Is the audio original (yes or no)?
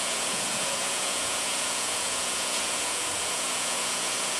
no